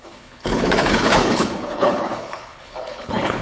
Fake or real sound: fake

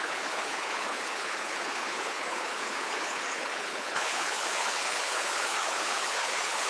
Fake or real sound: fake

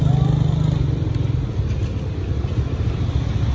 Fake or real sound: real